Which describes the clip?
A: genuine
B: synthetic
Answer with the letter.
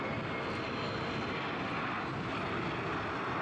A